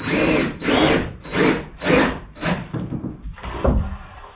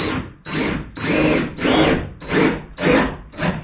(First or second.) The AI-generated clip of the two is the first